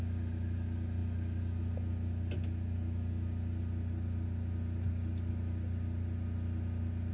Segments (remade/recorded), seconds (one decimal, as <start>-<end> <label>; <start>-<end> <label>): 0.0-7.1 recorded